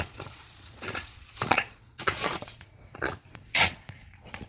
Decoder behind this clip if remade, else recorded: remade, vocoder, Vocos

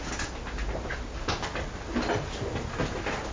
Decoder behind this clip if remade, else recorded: recorded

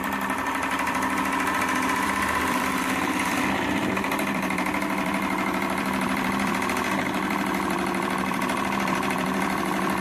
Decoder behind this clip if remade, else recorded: remade, vocoder, BigVGAN v2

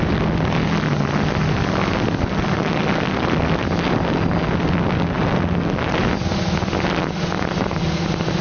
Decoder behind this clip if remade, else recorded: recorded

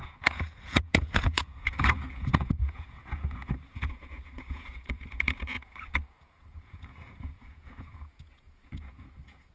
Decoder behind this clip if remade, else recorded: remade, vocoder, Vocos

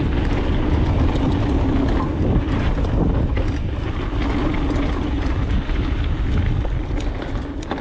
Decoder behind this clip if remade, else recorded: recorded